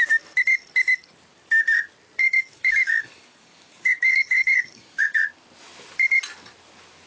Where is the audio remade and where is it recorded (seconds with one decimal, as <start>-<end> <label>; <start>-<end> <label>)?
0.0-2.2 recorded; 2.2-5.2 remade; 5.2-7.1 recorded